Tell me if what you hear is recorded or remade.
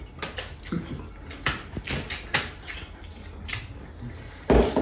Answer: recorded